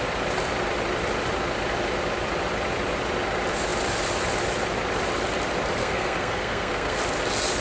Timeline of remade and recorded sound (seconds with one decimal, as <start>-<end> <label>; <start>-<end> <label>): 0.0-5.8 recorded; 5.8-7.0 remade; 7.0-7.6 recorded